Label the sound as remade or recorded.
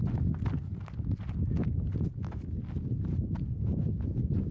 recorded